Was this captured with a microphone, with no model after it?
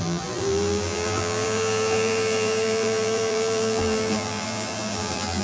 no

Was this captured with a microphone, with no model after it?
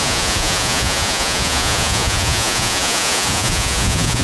no